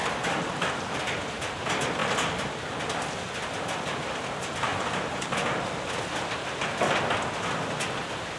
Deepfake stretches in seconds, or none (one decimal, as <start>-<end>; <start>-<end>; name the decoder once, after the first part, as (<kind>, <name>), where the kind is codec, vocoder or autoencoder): 0.0-0.8 (vocoder, BigVGAN v2); 2.0-2.8; 4.7-5.9